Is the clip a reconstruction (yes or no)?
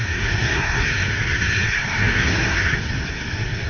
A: yes